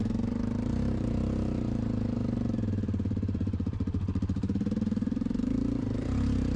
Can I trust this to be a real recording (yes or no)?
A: no